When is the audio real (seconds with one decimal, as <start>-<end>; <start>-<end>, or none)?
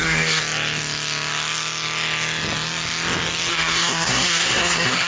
0.4-3.5